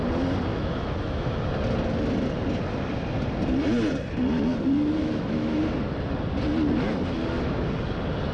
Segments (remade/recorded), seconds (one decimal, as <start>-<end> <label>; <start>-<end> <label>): 0.0-0.5 recorded; 0.5-1.5 remade; 1.5-5.0 recorded; 5.0-5.6 remade; 5.6-8.3 recorded

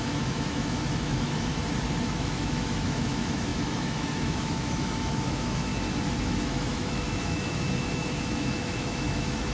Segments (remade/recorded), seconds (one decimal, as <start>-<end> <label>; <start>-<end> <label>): 0.0-1.5 remade; 1.5-2.0 recorded; 2.0-5.7 remade; 5.7-6.2 recorded; 6.2-9.5 remade

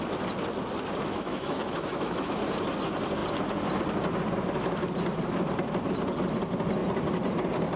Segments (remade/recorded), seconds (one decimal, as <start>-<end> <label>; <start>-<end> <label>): 0.0-1.1 recorded; 1.1-2.4 remade; 2.4-7.8 recorded

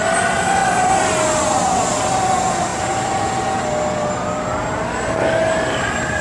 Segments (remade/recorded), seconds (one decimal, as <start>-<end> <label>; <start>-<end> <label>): 0.0-6.2 recorded

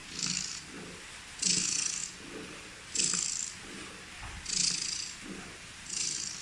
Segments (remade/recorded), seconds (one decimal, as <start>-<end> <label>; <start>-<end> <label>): 0.0-6.4 recorded

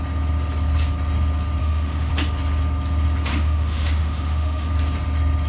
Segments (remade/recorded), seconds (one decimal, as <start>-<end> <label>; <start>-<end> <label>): 0.0-1.6 recorded; 1.6-2.1 remade; 2.1-3.3 recorded; 3.3-4.7 remade; 4.7-5.5 recorded

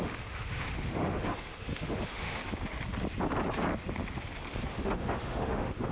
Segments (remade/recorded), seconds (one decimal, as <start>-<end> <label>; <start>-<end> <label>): 0.0-2.4 remade; 2.4-4.7 recorded; 4.7-5.9 remade

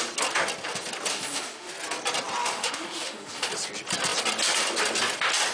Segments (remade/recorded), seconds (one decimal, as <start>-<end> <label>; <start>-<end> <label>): 0.0-1.1 recorded; 1.1-1.7 remade; 1.7-2.4 recorded; 2.4-3.5 remade; 3.5-5.5 recorded